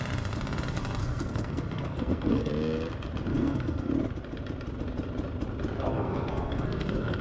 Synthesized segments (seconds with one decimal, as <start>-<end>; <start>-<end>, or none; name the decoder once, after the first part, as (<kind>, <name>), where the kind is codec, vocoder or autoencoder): 1.0-2.5 (codec, SNAC); 3.3-3.9; 5.9-7.2